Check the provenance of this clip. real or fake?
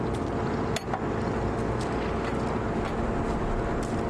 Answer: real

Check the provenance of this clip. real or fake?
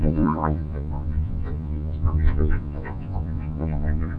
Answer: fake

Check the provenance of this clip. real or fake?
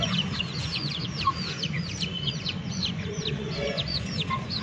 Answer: fake